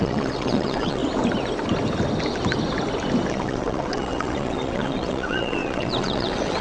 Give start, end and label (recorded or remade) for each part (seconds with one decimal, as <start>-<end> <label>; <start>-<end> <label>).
0.0-1.0 remade; 1.0-3.3 recorded; 3.3-6.6 remade